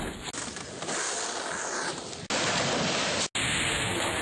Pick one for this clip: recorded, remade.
recorded